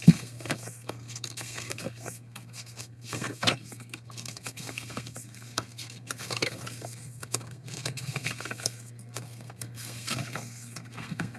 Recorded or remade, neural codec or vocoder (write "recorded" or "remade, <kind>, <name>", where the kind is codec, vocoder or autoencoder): remade, codec, SNAC